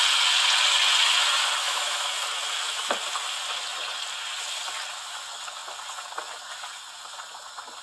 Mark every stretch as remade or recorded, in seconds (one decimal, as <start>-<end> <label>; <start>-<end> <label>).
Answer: 0.0-1.6 recorded; 1.6-2.1 remade; 2.1-7.8 recorded